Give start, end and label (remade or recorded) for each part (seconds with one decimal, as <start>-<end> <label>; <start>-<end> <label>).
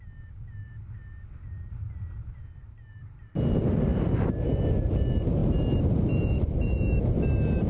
0.0-7.7 recorded